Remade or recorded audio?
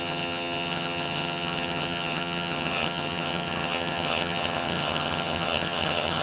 remade